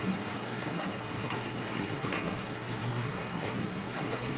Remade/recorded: remade